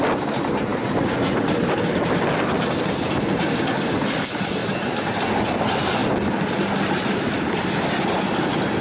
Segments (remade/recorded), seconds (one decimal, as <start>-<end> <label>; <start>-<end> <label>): 0.0-8.8 recorded